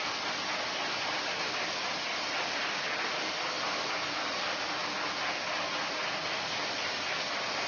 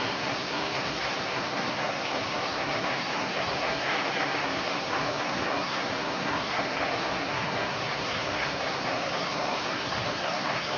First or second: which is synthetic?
second